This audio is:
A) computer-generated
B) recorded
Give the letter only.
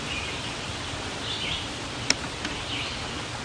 B